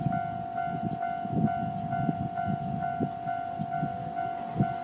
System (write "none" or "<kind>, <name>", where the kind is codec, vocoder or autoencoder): none